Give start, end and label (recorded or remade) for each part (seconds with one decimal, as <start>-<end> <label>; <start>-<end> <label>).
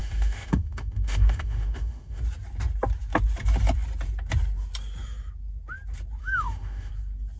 0.0-2.2 remade; 2.2-6.2 recorded; 6.2-6.9 remade; 6.9-7.4 recorded